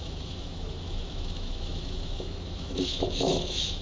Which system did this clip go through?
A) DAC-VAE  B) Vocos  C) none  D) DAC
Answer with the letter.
A